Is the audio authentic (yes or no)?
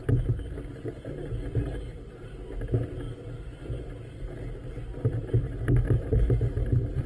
yes